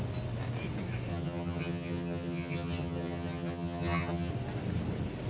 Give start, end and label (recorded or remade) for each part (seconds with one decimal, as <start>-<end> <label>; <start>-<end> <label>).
0.0-1.1 recorded; 1.1-4.3 remade; 4.3-5.3 recorded

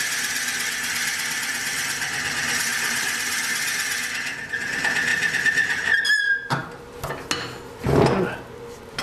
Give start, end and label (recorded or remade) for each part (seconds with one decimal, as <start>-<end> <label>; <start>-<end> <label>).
0.0-5.1 recorded; 5.1-6.0 remade; 6.0-9.0 recorded

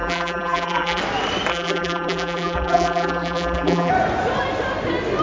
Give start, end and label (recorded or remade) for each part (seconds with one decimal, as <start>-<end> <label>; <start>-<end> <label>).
0.0-1.0 remade; 1.0-1.5 recorded; 1.5-3.9 remade; 3.9-5.2 recorded

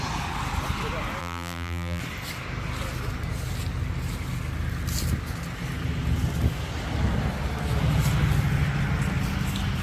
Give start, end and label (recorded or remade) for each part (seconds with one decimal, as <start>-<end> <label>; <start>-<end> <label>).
0.0-1.2 recorded; 1.2-2.0 remade; 2.0-9.8 recorded

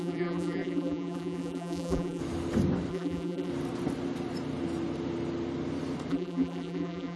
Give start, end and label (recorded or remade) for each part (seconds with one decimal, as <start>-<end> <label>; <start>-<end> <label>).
0.0-2.2 remade; 2.2-2.9 recorded; 2.9-3.5 remade; 3.5-6.1 recorded; 6.1-7.2 remade

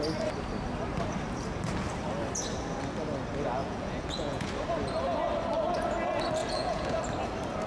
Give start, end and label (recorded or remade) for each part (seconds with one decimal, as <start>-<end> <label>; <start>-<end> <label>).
0.0-3.6 recorded; 3.6-4.5 remade; 4.5-6.4 recorded; 6.4-7.0 remade; 7.0-7.7 recorded

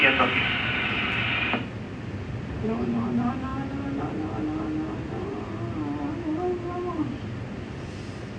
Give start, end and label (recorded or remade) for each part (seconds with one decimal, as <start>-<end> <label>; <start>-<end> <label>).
0.0-8.4 recorded

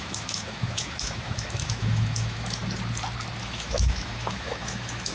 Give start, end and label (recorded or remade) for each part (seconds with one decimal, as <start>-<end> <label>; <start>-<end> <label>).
0.0-2.6 remade; 2.6-3.4 recorded; 3.4-5.1 remade